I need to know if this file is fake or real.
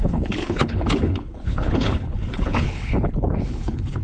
fake